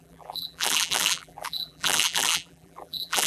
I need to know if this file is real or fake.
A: fake